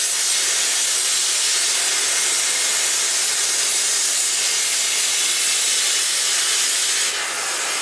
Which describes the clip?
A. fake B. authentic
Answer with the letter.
B